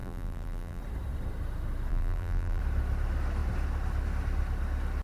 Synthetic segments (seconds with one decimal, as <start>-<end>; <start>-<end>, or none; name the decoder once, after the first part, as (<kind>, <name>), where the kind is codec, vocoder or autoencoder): 0.0-0.8 (vocoder, BigVGAN v2); 1.9-2.6